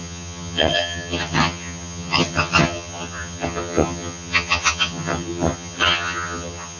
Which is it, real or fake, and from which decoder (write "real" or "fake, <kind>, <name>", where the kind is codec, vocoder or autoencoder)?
fake, vocoder, HiFi-GAN